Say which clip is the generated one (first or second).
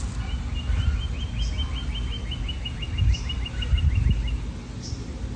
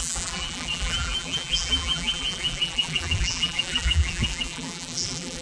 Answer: second